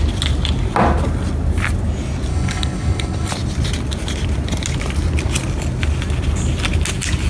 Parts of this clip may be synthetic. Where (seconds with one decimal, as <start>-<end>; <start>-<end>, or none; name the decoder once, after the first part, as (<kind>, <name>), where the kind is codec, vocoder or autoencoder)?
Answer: 2.3-3.3 (codec, HILCodec)